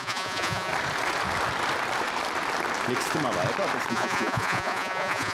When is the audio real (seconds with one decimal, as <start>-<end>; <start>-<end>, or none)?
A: 0.7-3.9